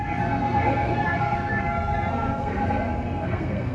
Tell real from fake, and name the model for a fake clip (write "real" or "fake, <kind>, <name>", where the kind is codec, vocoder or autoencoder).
fake, codec, SNAC